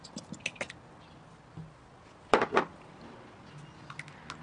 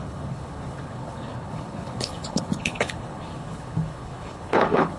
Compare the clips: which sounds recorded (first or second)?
first